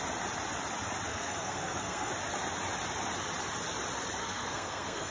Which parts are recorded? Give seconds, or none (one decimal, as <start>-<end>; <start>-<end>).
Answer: 0.0-1.1; 2.1-4.2